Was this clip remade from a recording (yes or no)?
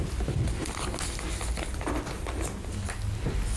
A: no